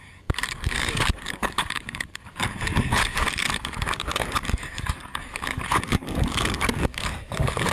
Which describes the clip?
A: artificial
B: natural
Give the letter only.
A